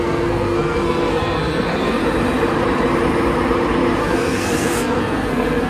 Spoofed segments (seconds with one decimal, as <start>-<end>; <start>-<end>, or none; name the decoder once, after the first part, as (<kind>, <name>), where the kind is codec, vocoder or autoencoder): 0.0-2.0 (codec, SNAC); 4.0-5.7